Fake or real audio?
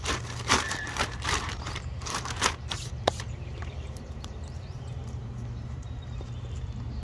fake